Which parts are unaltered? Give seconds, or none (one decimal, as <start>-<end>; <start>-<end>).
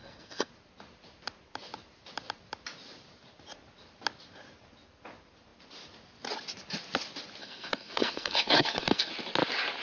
0.5-7.4; 9.1-9.8